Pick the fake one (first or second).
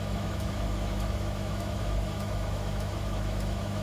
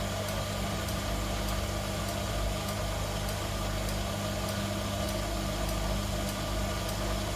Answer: first